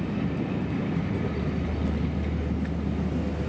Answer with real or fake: real